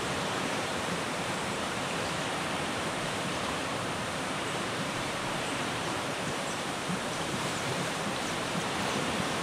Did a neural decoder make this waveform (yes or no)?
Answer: yes